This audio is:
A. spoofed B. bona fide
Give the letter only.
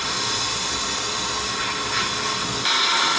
B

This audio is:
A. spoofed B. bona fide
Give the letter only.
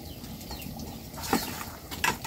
B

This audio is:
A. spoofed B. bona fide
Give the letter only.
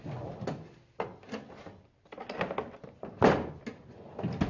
B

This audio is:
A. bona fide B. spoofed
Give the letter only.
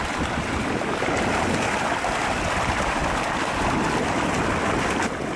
A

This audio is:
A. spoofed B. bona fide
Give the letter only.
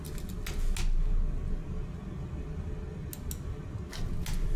B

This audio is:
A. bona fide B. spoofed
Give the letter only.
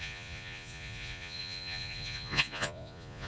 B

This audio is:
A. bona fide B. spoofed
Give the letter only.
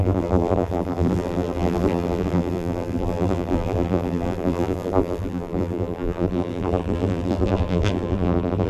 B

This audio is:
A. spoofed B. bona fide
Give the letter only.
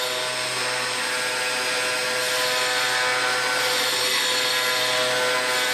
B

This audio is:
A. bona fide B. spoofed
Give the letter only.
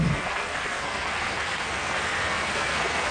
B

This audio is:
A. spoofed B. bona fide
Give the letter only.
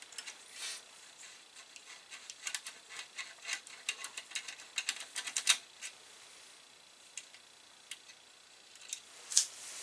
B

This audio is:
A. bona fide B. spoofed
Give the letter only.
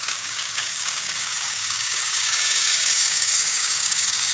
B